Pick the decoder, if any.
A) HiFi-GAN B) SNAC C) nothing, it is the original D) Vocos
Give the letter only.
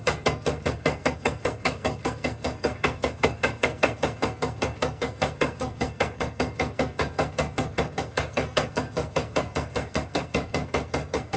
B